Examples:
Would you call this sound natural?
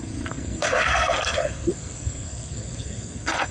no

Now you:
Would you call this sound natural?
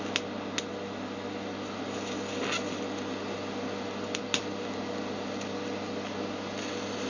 yes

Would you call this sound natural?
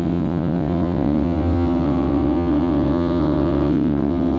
no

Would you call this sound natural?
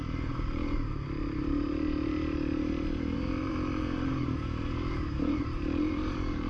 no